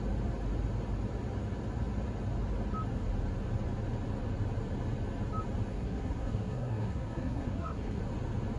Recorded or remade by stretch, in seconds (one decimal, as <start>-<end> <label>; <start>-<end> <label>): 0.0-5.7 recorded; 5.7-8.0 remade; 8.0-8.6 recorded